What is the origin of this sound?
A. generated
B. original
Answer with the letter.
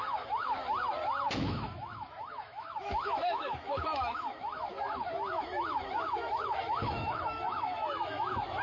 A